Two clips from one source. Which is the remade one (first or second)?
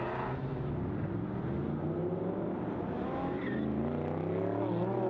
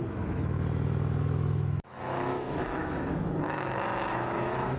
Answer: second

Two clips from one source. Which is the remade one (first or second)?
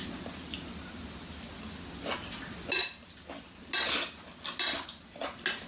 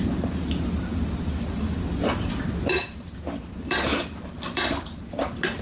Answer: second